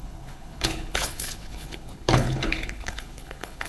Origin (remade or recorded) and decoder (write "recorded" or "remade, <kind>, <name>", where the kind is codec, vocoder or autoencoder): remade, codec, HILCodec